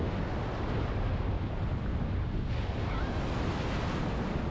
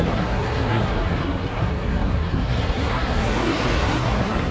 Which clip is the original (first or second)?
first